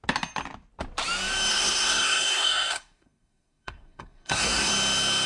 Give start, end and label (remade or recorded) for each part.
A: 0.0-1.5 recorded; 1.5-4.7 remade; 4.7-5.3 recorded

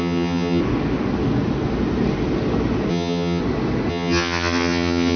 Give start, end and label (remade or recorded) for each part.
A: 0.0-0.6 remade; 0.6-2.9 recorded; 2.9-3.4 remade; 3.4-3.9 recorded; 3.9-5.2 remade

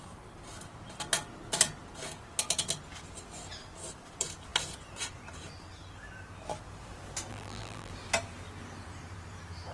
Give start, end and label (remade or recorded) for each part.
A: 0.0-7.3 recorded; 7.3-7.9 remade; 7.9-9.7 recorded